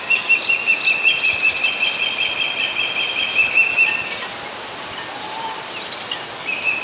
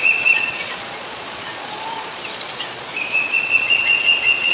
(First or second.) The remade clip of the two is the second